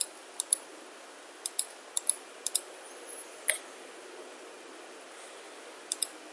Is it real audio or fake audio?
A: real